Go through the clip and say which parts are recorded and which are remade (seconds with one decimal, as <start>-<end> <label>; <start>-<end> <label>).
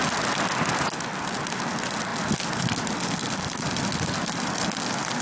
0.0-5.2 recorded